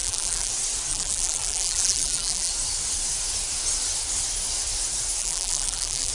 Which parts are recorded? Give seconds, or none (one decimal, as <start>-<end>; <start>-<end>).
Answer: 0.5-0.9; 2.5-5.2